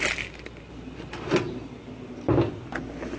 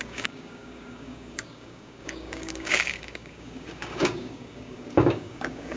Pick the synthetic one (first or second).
second